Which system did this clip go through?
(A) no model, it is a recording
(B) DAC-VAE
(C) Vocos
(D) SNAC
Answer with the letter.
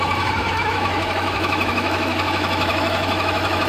B